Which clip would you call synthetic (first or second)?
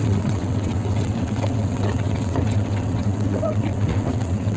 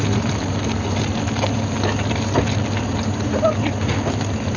first